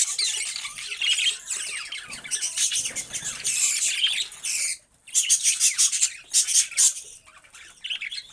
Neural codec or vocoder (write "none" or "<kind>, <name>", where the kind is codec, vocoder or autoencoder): vocoder, BigVGAN v2